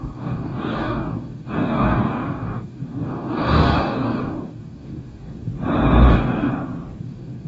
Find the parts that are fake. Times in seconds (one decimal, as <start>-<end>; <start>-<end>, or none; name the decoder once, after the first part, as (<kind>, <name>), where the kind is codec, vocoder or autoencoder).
0.0-5.5 (codec, DAC); 6.1-6.5; 7.0-7.5